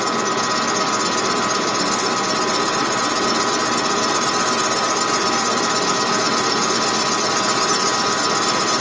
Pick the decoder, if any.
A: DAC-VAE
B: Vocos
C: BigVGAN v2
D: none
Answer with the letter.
C